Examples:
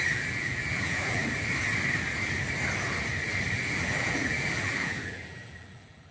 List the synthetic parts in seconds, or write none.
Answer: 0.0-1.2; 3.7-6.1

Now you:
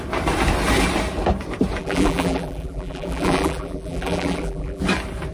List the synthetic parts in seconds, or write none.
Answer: 1.8-4.8

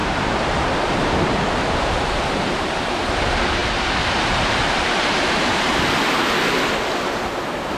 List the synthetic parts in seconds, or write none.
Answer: 0.0-2.7; 3.6-5.9

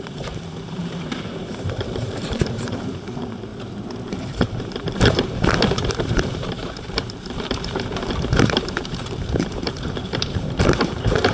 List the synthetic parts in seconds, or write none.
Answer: 0.0-3.5; 4.1-11.3

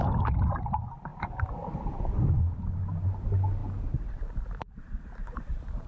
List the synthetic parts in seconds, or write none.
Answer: none

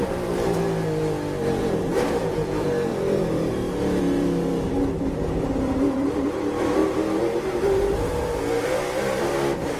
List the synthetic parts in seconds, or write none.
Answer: 0.0-0.6; 1.6-9.8

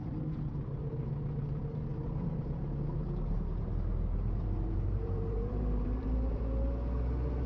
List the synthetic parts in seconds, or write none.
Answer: 1.9-6.4

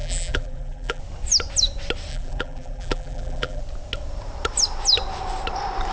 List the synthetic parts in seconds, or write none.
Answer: 0.0-1.0; 2.1-3.6